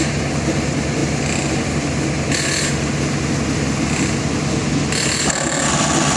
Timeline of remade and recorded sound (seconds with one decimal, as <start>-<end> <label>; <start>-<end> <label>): 0.0-6.2 recorded